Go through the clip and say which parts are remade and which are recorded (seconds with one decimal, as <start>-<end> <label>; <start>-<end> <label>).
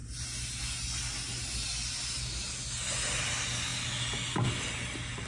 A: 0.0-5.3 recorded